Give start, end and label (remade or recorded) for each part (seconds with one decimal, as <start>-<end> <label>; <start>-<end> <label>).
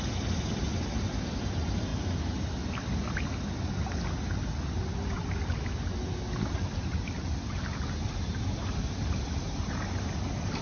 0.0-10.6 recorded